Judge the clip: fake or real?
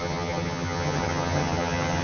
fake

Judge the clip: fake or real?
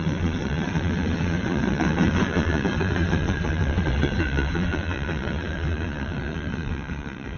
fake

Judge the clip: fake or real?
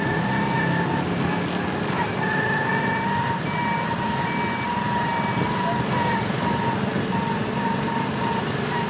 real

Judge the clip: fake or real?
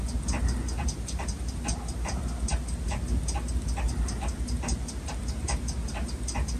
real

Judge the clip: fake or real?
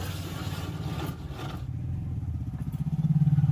real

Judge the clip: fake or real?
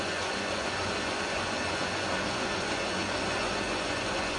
fake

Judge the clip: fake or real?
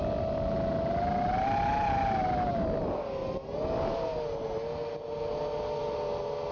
real